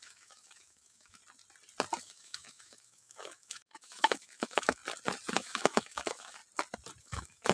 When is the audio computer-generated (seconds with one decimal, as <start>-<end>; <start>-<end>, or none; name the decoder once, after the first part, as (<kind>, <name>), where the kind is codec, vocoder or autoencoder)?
0.0-1.2 (autoencoder, DAC-VAE); 2.0-4.8; 5.3-6.4; 7.0-7.5